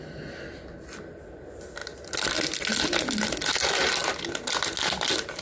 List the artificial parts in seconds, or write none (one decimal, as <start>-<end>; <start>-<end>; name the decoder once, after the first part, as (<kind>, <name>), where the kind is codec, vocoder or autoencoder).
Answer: none